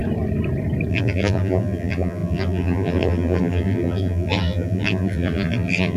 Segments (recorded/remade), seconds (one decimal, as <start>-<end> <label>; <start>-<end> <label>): 0.0-0.9 recorded; 0.9-6.0 remade